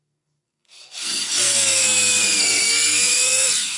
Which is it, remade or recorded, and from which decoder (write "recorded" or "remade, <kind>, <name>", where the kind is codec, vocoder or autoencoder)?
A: remade, codec, SNAC